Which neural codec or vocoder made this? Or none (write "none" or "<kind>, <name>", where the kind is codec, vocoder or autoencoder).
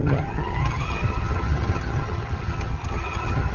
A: vocoder, HiFi-GAN